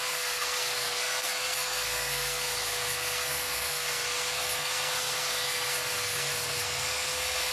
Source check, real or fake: fake